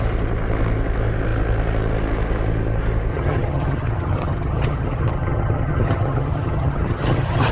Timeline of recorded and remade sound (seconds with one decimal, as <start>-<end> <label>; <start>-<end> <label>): 0.0-3.1 recorded; 3.1-7.5 remade